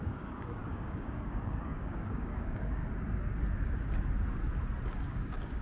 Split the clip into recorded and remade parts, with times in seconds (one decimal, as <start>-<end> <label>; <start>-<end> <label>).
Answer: 0.0-2.8 remade; 2.8-5.1 recorded; 5.1-5.6 remade